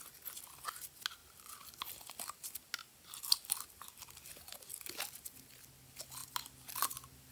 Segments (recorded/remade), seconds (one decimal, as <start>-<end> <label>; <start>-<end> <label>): 0.0-7.3 recorded